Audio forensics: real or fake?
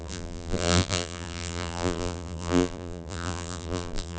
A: fake